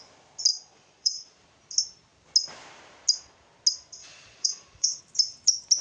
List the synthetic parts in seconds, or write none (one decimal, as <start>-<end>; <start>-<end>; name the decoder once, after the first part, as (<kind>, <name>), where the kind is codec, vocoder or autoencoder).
0.5-1.4 (vocoder, Vocos); 4.0-5.0